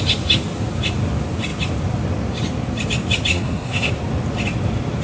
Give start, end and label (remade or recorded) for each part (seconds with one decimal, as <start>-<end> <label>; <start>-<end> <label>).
0.0-3.3 recorded; 3.3-3.9 remade; 3.9-5.0 recorded